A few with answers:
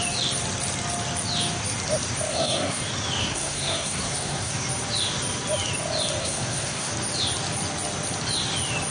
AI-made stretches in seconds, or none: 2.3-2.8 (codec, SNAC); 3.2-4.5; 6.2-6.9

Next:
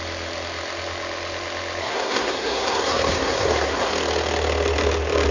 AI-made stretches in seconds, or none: 1.8-3.9 (codec, SNAC)

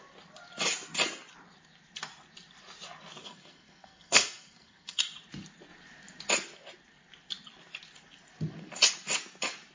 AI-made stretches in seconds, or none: 3.2-5.0 (codec, SNAC)

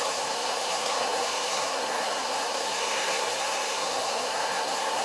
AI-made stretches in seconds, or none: 0.0-5.0 (codec, SNAC)

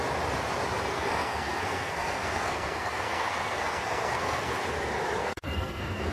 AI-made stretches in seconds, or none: 0.9-4.6 (codec, SNAC); 5.2-6.1